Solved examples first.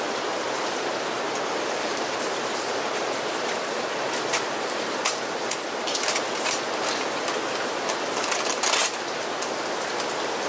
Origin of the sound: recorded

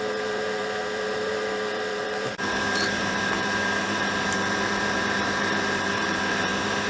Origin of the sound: remade